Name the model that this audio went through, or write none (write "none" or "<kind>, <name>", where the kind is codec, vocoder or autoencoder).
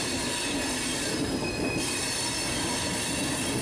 none